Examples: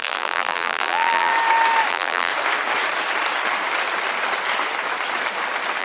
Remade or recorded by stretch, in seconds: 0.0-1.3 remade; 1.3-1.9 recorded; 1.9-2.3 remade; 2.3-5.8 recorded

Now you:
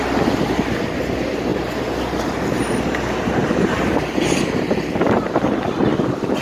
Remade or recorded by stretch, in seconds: 0.0-3.4 recorded; 3.4-6.4 remade

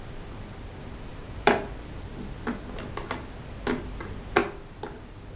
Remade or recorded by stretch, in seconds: 0.0-1.1 recorded; 1.1-1.6 remade; 1.6-5.4 recorded